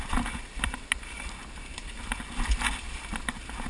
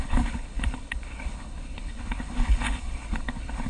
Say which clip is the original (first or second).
first